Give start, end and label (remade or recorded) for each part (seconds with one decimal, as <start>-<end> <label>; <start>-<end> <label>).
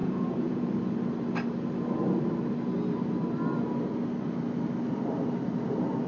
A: 0.0-0.7 remade; 0.7-6.1 recorded